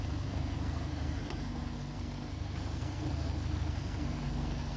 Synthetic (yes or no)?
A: yes